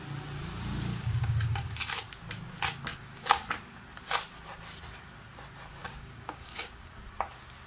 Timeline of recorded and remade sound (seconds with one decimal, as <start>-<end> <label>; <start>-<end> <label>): 0.0-0.9 recorded; 0.9-1.8 remade; 1.8-2.9 recorded; 2.9-3.5 remade; 3.5-5.7 recorded; 5.7-6.9 remade; 6.9-7.7 recorded